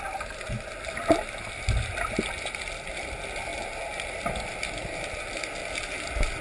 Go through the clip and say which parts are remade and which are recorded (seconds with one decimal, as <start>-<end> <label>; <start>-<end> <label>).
0.0-6.4 recorded